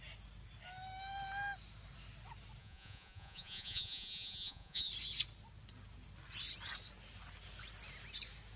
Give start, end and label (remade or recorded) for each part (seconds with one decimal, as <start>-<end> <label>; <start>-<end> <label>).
0.0-2.6 recorded; 2.6-4.9 remade; 4.9-8.6 recorded